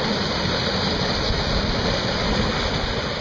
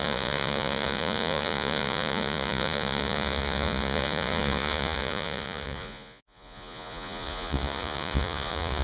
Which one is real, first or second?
first